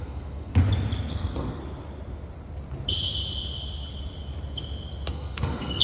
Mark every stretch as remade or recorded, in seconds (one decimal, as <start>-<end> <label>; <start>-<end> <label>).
0.0-0.5 remade; 0.5-1.1 recorded; 1.1-1.6 remade; 1.6-5.1 recorded; 5.1-5.8 remade